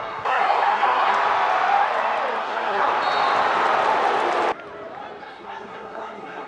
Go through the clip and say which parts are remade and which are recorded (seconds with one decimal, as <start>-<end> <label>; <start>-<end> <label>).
0.0-1.1 remade; 1.1-2.4 recorded; 2.4-2.9 remade; 2.9-5.2 recorded; 5.2-6.5 remade